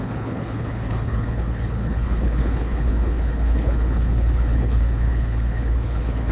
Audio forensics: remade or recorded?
remade